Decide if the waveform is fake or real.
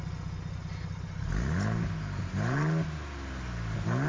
real